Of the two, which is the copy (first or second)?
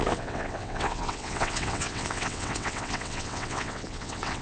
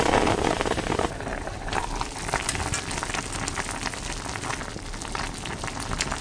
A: first